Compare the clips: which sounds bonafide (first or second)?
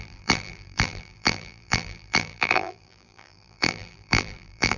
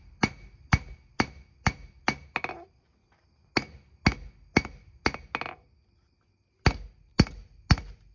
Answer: second